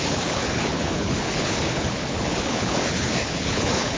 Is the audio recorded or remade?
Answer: remade